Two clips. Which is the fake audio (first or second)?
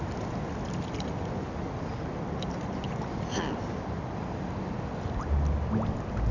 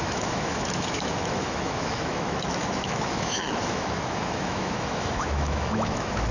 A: second